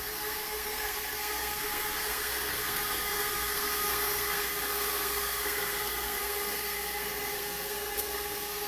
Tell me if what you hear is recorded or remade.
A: remade